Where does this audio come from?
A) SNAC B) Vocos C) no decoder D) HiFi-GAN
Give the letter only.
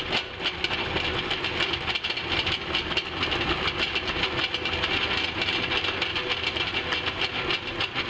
C